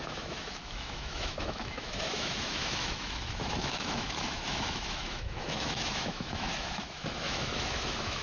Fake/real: fake